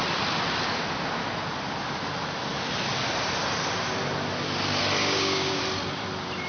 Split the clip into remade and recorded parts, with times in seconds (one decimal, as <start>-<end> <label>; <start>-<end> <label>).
0.0-5.0 recorded; 5.0-5.6 remade; 5.6-6.5 recorded